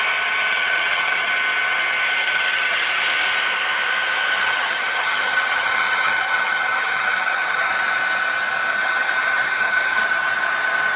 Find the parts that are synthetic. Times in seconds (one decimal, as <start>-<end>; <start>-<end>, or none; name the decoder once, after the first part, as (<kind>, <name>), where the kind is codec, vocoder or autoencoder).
0.5-1.3 (vocoder, HiFi-GAN); 2.2-3.0; 4.4-7.7; 8.7-10.0